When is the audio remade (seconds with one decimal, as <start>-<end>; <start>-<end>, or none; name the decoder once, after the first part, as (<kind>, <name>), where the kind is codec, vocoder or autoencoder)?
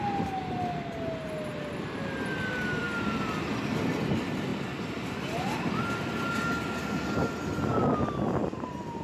none